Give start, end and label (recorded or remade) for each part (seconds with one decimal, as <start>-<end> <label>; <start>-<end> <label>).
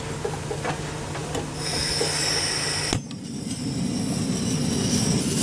0.0-5.4 recorded